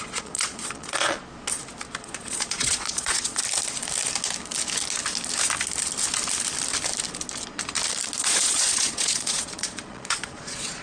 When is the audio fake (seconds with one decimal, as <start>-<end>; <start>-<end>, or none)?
0.0-1.2; 2.0-3.4; 8.2-10.8